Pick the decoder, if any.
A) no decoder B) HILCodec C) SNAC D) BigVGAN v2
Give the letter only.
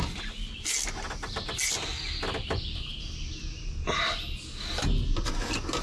A